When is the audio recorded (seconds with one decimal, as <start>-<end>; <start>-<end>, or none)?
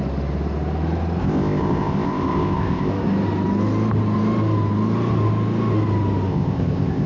0.0-1.2; 2.9-6.3